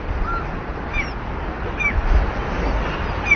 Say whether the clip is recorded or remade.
recorded